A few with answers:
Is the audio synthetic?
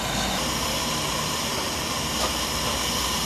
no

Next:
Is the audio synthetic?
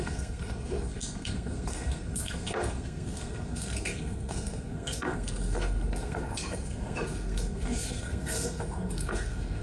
yes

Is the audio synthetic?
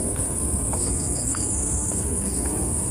yes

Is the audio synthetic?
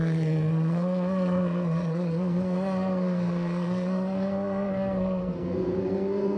yes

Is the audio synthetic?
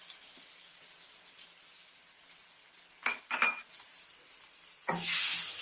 no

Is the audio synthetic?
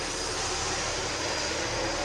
no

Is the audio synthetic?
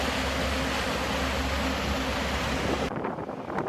no